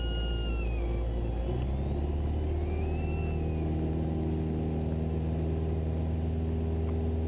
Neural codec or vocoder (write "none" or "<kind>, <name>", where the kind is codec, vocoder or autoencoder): none